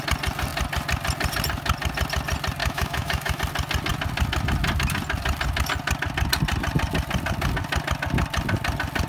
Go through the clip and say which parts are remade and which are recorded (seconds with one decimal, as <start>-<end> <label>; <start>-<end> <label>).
0.0-2.6 recorded; 2.6-3.4 remade; 3.4-9.1 recorded